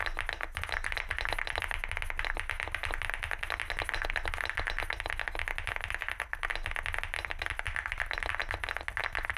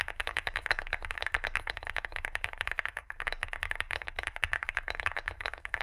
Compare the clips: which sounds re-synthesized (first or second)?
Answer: second